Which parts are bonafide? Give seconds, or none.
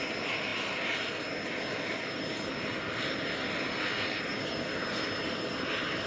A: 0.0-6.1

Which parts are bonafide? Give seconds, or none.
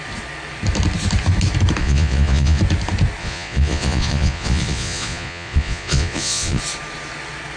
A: 0.0-1.8; 2.6-3.2; 6.6-7.6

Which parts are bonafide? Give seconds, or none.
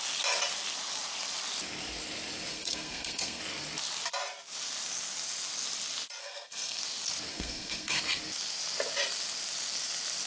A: 0.0-2.5; 3.4-6.2; 6.8-7.3; 8.0-10.3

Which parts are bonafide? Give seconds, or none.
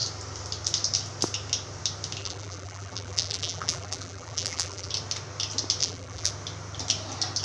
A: 0.0-2.2; 4.9-5.8; 6.3-7.4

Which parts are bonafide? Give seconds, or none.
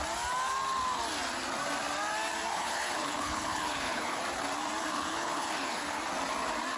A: 0.0-2.5; 4.2-4.9; 6.0-6.8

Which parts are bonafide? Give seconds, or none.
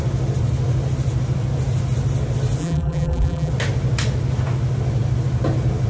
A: 0.0-2.6; 3.5-5.9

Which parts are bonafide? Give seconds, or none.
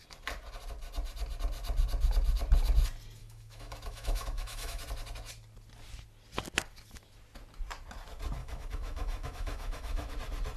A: 0.0-3.2; 4.8-8.4; 10.1-10.6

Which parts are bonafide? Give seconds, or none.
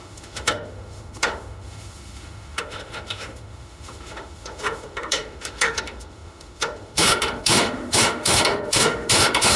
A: none